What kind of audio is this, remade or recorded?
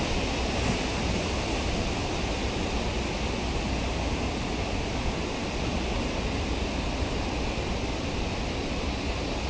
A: recorded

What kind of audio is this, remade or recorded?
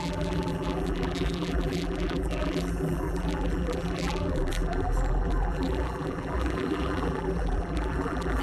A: remade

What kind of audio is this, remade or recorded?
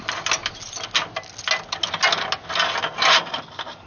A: recorded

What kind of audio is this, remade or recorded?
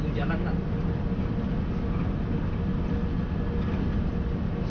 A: recorded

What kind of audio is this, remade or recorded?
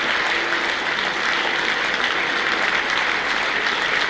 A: recorded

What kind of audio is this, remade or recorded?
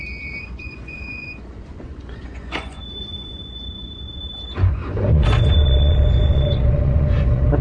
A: remade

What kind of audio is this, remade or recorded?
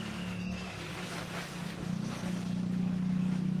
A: remade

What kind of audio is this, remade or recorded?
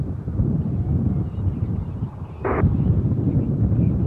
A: remade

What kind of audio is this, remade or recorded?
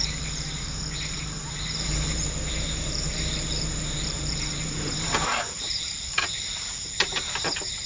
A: remade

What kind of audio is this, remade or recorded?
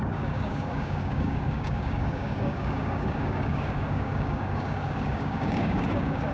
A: remade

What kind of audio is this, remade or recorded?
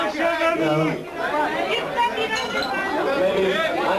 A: recorded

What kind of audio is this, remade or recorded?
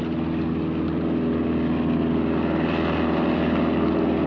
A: recorded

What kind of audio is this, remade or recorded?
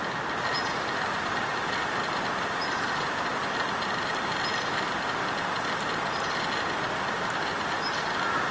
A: recorded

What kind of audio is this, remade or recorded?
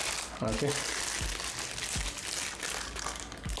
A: recorded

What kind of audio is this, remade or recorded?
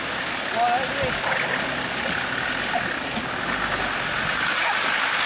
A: recorded